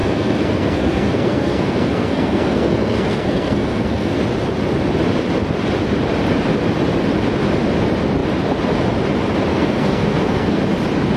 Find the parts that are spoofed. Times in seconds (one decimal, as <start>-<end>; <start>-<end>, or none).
0.0-4.2; 9.5-10.6